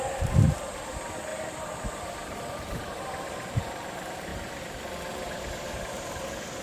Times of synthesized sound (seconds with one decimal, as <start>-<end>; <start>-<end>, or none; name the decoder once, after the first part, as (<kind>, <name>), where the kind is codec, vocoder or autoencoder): 0.0-4.3 (vocoder, BigVGAN v2); 5.7-6.6